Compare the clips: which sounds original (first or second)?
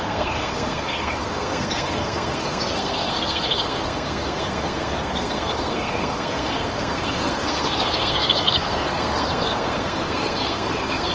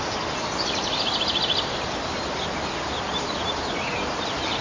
second